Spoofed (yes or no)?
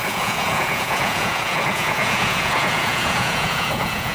yes